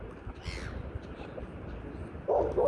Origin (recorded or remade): recorded